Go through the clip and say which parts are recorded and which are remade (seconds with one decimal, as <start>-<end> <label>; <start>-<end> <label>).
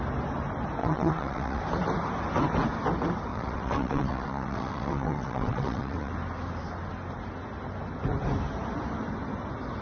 0.0-0.8 recorded; 0.8-1.6 remade; 1.6-3.3 recorded; 3.3-6.1 remade; 6.1-9.8 recorded